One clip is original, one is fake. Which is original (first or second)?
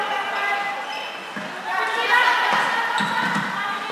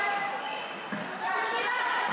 first